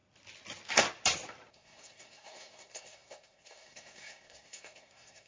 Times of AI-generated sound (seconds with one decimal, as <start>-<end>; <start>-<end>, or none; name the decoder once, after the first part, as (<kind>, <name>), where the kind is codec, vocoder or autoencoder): 1.5-5.3 (codec, SNAC)